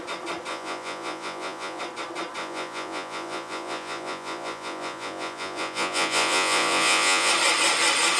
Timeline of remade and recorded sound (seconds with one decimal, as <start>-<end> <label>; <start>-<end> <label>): 0.0-0.5 recorded; 0.5-1.8 remade; 1.8-2.4 recorded; 2.4-7.3 remade; 7.3-8.2 recorded